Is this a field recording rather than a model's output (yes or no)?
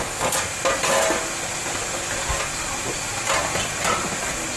yes